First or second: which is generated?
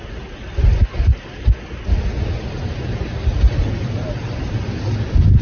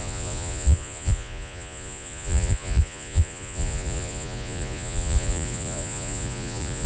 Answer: second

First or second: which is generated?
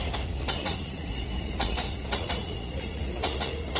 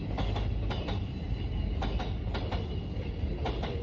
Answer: first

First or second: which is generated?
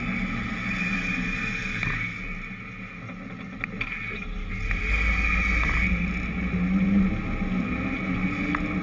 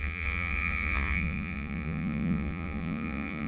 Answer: second